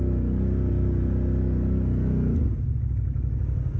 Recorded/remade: recorded